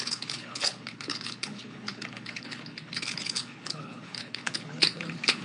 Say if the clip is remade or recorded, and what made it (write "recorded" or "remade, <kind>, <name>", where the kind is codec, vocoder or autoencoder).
remade, codec, HILCodec